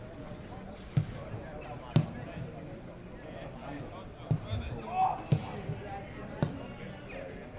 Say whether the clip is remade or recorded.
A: recorded